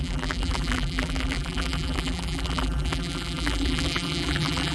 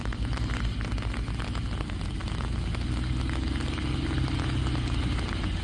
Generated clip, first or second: first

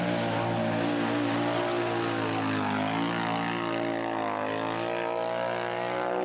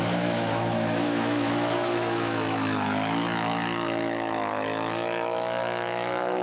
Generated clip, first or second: second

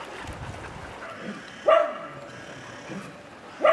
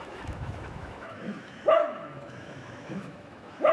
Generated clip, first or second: second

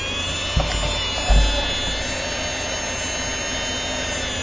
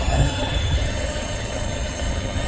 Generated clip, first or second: second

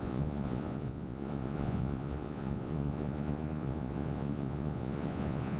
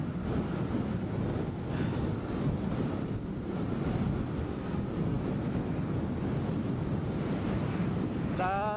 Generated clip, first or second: first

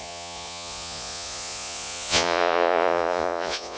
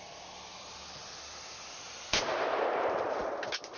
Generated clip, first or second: first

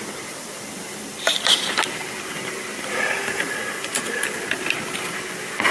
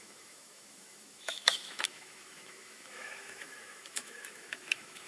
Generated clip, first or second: second